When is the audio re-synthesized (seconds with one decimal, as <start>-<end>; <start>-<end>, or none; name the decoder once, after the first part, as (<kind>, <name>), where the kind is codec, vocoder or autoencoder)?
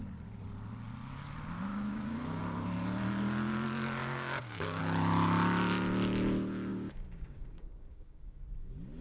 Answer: 1.7-2.4 (codec, DAC); 4.0-4.8; 6.7-8.4